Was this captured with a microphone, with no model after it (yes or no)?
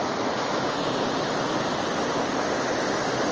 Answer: yes